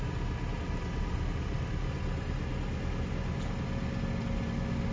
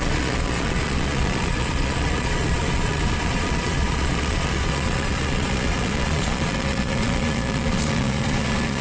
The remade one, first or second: second